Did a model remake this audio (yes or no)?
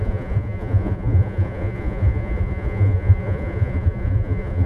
yes